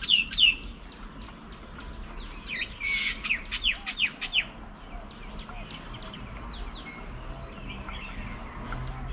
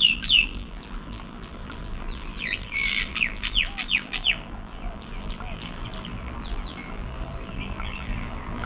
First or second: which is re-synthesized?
second